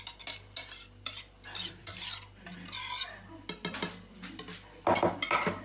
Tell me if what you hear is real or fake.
real